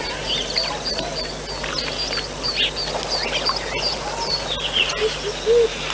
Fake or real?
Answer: real